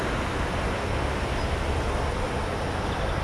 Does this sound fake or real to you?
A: real